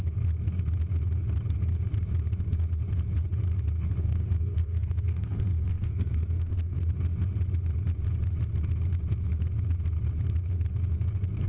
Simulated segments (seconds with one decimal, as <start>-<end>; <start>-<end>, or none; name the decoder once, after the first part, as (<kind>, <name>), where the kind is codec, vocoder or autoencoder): 4.0-6.9 (codec, SNAC)

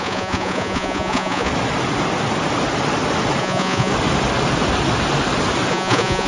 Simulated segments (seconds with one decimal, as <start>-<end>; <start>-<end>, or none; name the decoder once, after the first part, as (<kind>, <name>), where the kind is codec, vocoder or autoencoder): 0.0-1.5 (vocoder, Vocos); 3.4-3.9; 5.7-6.3

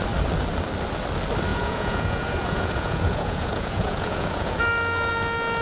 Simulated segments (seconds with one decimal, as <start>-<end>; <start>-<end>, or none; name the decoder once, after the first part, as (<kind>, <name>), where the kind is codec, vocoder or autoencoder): 1.5-4.6 (vocoder, Vocos)

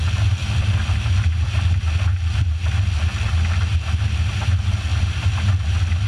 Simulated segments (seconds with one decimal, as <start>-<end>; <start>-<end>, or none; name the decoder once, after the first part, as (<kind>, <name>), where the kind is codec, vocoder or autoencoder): 0.4-1.8 (vocoder, BigVGAN v2); 4.9-5.5

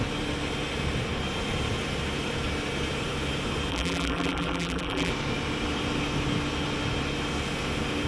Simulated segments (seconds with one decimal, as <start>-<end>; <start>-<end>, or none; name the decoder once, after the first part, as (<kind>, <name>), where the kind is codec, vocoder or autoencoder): 3.7-5.1 (vocoder, BigVGAN v2)